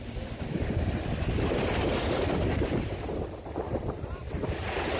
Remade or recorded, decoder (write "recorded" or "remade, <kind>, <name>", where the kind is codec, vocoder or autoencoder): recorded